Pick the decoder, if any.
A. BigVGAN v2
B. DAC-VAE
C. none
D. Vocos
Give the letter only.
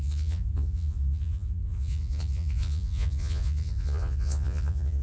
D